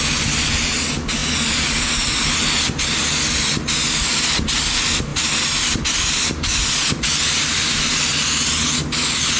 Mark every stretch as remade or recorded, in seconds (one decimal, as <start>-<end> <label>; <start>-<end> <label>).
0.0-5.1 recorded; 5.1-7.8 remade; 7.8-9.4 recorded